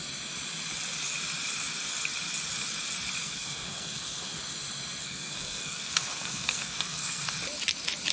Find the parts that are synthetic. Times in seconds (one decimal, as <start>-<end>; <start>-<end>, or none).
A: 3.2-4.4; 5.0-7.2